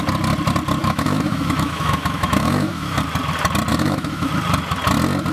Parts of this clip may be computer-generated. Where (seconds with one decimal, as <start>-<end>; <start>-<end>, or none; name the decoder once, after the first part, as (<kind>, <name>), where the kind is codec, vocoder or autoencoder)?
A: 0.8-3.0 (autoencoder, DAC-VAE); 3.7-4.3

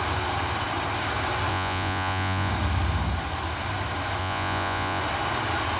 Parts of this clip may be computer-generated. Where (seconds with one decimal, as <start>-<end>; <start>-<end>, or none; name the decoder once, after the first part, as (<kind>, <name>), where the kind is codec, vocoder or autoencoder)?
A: 1.5-2.5 (vocoder, Vocos); 4.2-5.0